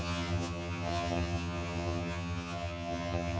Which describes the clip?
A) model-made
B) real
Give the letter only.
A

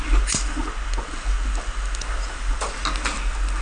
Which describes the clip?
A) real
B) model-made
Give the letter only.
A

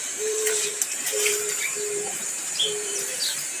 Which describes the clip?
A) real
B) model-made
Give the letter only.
B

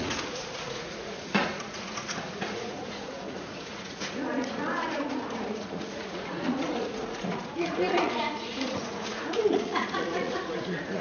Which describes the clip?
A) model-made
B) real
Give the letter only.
A